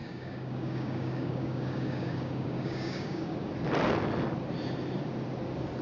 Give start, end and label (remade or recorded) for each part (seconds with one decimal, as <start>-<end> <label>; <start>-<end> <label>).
0.0-3.5 remade; 3.5-5.8 recorded